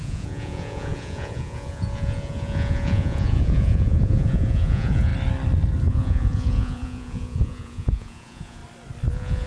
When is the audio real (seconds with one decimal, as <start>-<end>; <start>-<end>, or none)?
5.1-5.9; 8.6-9.1